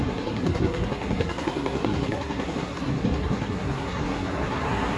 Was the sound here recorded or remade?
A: remade